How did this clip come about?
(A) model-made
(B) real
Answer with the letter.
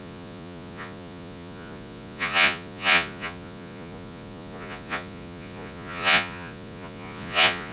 A